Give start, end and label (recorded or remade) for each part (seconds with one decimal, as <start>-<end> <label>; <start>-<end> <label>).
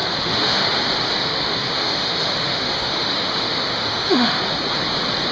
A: 0.0-0.7 remade; 0.7-1.2 recorded; 1.2-4.4 remade; 4.4-5.3 recorded